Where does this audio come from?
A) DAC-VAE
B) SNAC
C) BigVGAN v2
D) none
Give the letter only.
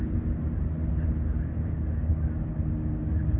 D